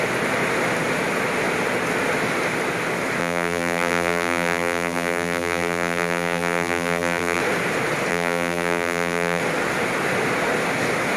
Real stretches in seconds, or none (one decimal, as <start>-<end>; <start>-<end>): 0.0-3.2; 7.4-8.1; 9.4-11.2